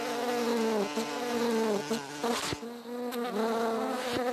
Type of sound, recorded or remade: recorded